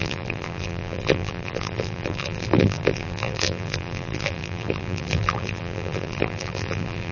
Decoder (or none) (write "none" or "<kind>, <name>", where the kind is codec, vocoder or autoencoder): vocoder, BigVGAN v2